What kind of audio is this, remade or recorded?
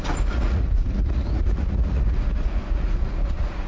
remade